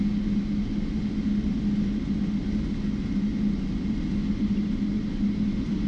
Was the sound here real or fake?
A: real